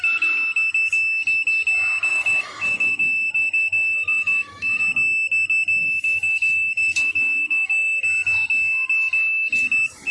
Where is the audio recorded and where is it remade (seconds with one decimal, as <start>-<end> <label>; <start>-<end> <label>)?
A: 0.0-2.1 recorded; 2.1-4.8 remade; 4.8-5.8 recorded; 5.8-8.0 remade; 8.0-10.1 recorded